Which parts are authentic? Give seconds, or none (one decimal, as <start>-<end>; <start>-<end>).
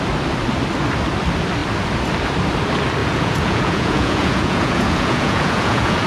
0.0-3.0